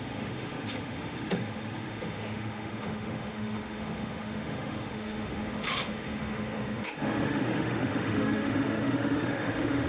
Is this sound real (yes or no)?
no